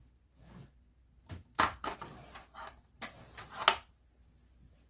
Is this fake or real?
real